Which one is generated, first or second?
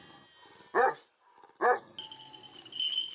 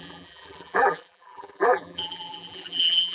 second